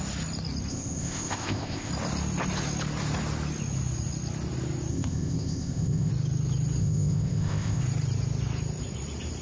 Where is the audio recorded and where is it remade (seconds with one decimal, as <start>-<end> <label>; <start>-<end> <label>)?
0.0-0.7 recorded; 0.7-1.9 remade; 1.9-4.9 recorded; 4.9-6.1 remade; 6.1-6.8 recorded; 6.8-7.8 remade; 7.8-9.4 recorded